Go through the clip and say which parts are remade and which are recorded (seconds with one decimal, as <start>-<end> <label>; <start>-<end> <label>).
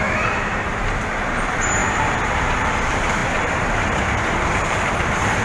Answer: 0.0-5.4 remade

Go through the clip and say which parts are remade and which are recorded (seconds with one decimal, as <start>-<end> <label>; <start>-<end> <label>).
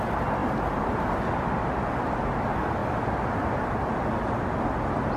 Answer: 0.0-0.4 recorded; 0.4-1.0 remade; 1.0-5.2 recorded